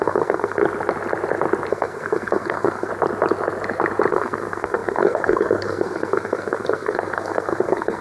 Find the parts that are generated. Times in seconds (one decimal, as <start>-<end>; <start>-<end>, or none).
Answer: 0.0-0.6; 1.7-2.9; 4.1-8.0